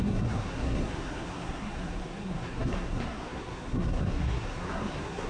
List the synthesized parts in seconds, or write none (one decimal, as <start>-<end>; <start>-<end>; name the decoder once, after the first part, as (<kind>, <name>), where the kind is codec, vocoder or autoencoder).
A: 0.0-5.3 (codec, SNAC)